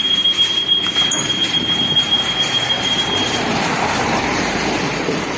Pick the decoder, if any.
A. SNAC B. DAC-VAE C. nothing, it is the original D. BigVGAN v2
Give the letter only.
D